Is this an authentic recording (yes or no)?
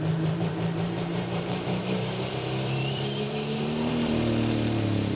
no